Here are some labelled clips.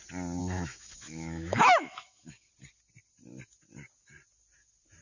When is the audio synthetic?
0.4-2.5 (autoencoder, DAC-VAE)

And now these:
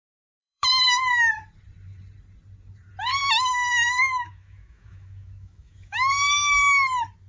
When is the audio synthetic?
0.4-1.3 (autoencoder, DAC-VAE); 3.2-6.1